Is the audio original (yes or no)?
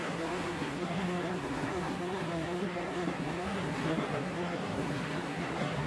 no